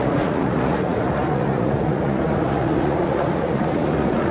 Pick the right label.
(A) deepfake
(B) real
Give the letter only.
A